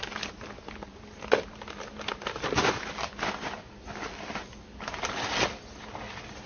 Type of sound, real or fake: real